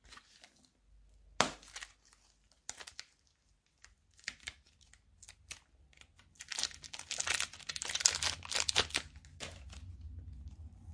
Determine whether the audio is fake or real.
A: real